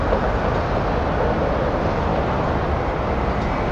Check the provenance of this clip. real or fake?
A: real